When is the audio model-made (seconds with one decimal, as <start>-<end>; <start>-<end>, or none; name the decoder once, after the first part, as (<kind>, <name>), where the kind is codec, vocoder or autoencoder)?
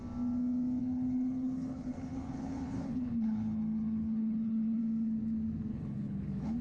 0.8-4.8 (codec, HILCodec); 5.7-6.6